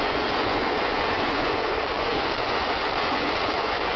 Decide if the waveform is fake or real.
fake